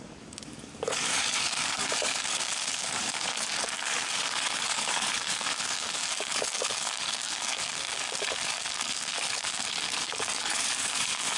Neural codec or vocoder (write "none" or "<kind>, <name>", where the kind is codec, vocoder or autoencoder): codec, DAC